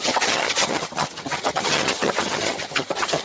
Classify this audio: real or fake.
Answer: fake